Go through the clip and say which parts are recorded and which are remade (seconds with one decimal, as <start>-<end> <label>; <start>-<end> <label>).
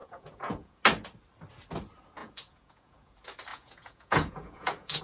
0.0-0.8 remade; 0.8-2.2 recorded; 2.2-3.1 remade; 3.1-3.5 recorded; 3.5-5.0 remade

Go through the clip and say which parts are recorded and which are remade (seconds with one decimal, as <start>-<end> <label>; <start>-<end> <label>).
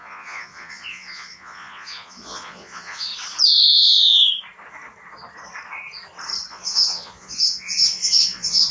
0.0-3.1 remade; 3.1-3.7 recorded; 3.7-4.2 remade; 4.2-6.5 recorded; 6.5-8.7 remade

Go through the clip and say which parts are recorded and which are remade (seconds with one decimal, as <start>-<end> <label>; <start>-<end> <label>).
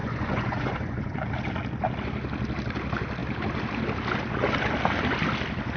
0.0-1.3 remade; 1.3-5.8 recorded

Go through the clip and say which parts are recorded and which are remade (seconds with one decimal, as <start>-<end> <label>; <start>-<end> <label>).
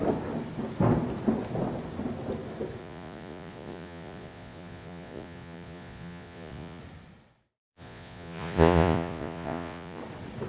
0.0-2.8 recorded; 2.8-6.8 remade; 6.8-7.7 recorded; 7.7-10.0 remade; 10.0-10.5 recorded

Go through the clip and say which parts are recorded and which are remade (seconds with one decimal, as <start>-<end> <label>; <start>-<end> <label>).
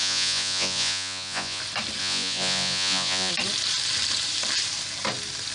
0.0-1.6 remade; 1.6-2.0 recorded; 2.0-3.3 remade; 3.3-5.5 recorded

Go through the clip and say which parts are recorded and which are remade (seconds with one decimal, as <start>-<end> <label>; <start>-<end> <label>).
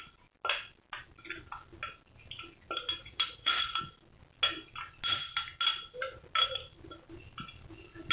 0.0-3.0 recorded; 3.0-3.8 remade; 3.8-8.1 recorded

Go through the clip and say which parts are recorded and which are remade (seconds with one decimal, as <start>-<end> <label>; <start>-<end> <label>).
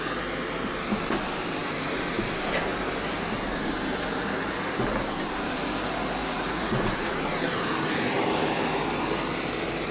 0.0-6.2 recorded; 6.2-7.2 remade; 7.2-9.9 recorded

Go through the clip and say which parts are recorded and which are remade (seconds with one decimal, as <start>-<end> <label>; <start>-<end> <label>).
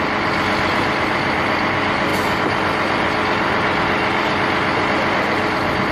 0.0-5.9 recorded